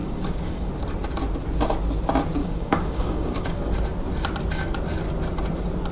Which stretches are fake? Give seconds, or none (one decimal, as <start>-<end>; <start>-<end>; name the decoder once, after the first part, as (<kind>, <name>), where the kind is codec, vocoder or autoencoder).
0.0-0.7 (codec, DAC); 2.4-3.6